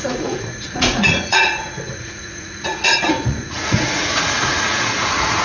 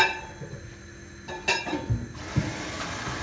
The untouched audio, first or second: second